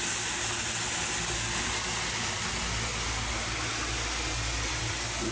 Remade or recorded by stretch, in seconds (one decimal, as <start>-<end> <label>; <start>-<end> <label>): 0.0-5.3 recorded